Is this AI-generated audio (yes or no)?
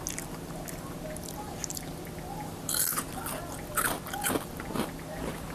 no